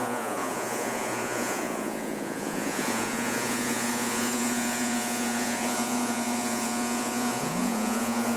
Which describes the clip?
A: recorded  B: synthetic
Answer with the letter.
B